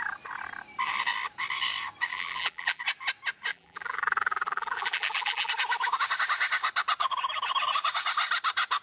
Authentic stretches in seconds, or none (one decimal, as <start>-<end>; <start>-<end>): 0.0-2.1; 2.8-3.5; 5.5-8.8